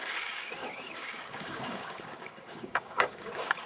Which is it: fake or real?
fake